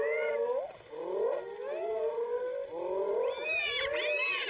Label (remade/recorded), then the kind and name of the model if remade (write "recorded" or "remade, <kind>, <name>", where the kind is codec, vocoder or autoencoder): recorded